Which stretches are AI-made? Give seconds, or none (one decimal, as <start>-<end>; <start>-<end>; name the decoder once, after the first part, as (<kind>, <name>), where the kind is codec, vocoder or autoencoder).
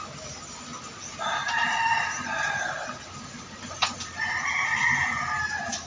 none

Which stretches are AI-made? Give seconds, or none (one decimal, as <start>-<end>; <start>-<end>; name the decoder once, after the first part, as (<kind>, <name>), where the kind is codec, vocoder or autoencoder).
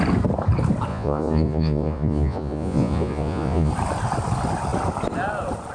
0.9-3.7 (vocoder, Vocos)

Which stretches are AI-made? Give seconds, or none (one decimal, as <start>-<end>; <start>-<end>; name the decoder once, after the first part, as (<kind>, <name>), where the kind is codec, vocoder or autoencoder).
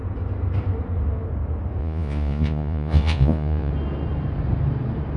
1.8-3.7 (vocoder, Vocos)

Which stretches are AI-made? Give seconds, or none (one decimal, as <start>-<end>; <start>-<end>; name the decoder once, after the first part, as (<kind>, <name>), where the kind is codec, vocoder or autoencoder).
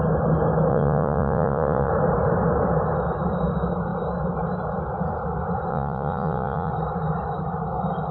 0.7-1.9 (vocoder, Vocos); 5.7-6.7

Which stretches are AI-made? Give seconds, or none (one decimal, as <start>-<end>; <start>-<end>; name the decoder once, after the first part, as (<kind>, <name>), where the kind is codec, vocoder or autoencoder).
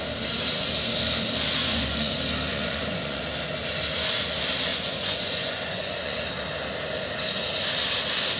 1.6-2.1 (vocoder, Vocos); 2.5-3.2; 4.7-6.2